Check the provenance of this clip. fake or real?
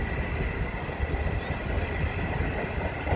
real